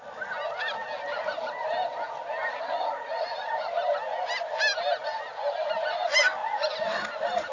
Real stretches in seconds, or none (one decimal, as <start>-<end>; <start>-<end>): 0.0-2.5; 3.5-7.5